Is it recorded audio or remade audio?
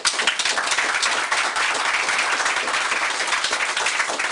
recorded